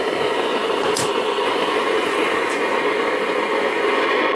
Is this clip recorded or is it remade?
remade